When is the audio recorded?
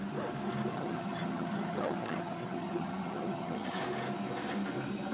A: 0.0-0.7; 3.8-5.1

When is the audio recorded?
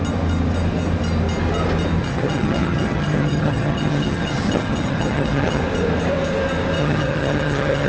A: 0.0-2.0; 5.6-6.8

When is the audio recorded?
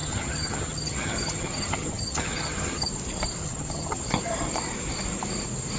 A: 2.9-3.4; 4.0-5.8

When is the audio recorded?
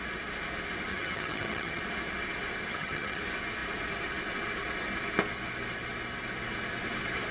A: 0.0-0.9; 1.8-2.7; 3.2-7.3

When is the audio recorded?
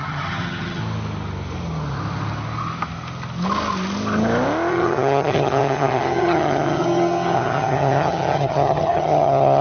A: 0.8-4.7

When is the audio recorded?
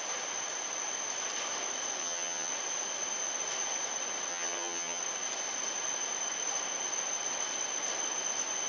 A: 0.0-2.0; 2.5-4.3; 5.0-8.7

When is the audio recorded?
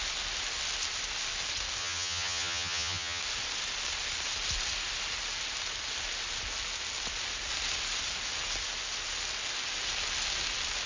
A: 0.0-1.8; 3.2-10.9